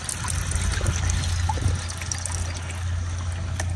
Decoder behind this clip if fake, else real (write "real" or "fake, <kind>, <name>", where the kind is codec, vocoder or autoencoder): real